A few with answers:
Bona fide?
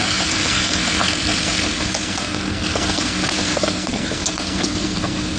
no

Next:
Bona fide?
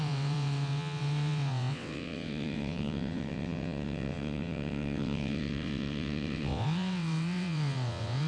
no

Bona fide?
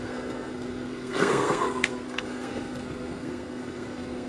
no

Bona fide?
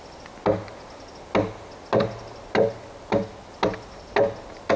yes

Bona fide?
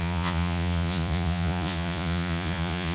no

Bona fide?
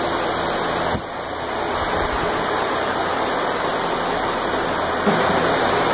yes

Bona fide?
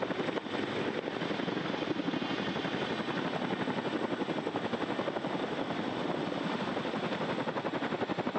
yes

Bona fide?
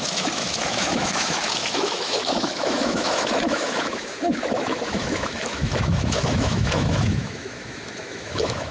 no